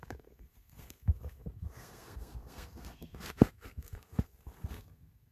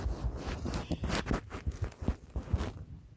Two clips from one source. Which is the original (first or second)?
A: second